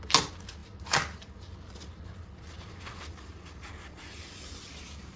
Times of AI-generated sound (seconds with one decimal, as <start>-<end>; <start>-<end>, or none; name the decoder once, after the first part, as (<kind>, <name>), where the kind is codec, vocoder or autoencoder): none